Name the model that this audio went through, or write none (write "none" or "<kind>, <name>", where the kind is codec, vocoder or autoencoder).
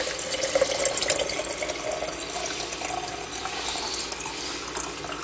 none